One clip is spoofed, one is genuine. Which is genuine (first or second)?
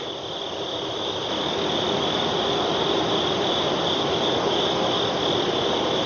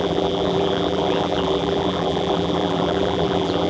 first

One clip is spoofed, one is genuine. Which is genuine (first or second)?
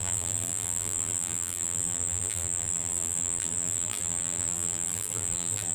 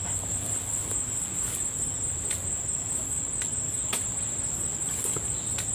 second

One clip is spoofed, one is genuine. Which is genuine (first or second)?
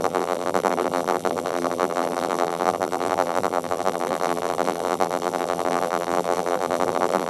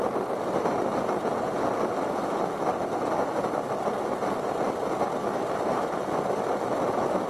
second